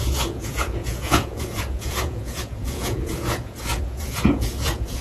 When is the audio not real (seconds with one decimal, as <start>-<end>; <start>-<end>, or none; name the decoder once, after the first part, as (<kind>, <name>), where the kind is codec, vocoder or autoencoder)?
0.0-5.0 (vocoder, Vocos)